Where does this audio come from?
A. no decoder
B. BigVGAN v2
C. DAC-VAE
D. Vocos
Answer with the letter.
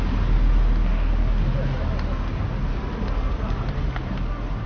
A